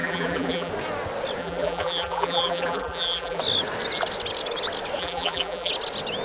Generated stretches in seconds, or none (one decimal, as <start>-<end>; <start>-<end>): 0.0-0.7; 1.4-3.4; 5.0-5.7